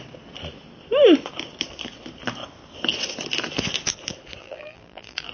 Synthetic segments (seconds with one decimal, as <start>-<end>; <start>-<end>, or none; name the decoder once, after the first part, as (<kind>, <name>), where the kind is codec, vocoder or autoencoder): 4.4-5.3 (vocoder, BigVGAN v2)